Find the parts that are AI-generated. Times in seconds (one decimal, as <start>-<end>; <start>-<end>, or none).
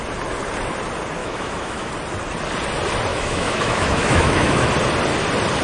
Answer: 1.2-1.9; 3.1-4.7